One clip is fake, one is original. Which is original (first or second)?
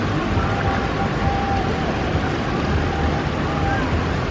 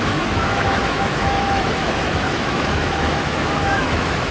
first